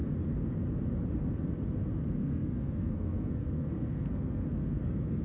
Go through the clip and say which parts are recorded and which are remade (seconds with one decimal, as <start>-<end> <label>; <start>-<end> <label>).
0.0-2.1 recorded; 2.1-5.2 remade